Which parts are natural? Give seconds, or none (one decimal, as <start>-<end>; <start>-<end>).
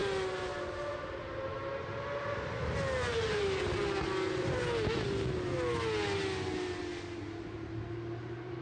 0.0-8.6